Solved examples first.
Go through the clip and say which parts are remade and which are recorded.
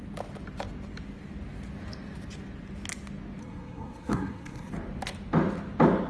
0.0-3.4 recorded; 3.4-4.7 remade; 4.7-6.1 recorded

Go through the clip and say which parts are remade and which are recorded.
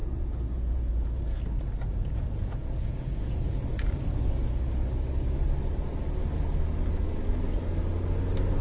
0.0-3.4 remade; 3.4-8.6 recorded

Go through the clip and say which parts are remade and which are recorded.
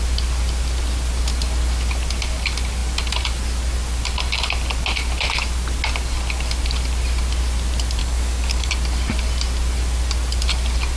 0.0-8.0 recorded; 8.0-8.7 remade; 8.7-11.0 recorded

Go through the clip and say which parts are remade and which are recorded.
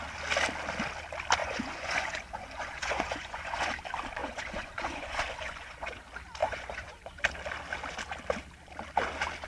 0.0-1.4 recorded; 1.4-3.7 remade; 3.7-4.2 recorded; 4.2-6.0 remade; 6.0-6.4 recorded; 6.4-7.2 remade; 7.2-9.5 recorded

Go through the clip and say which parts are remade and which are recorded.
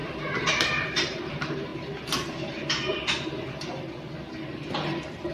0.0-1.7 remade; 1.7-5.3 recorded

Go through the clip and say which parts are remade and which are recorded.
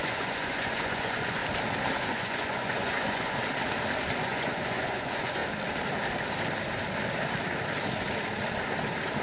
0.0-1.4 remade; 1.4-2.0 recorded; 2.0-3.4 remade; 3.4-4.2 recorded; 4.2-5.4 remade; 5.4-9.2 recorded